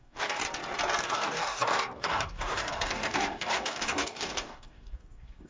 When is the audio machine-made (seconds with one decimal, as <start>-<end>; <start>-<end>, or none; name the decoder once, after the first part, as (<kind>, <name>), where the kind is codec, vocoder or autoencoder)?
0.0-0.4 (codec, DAC); 1.0-5.5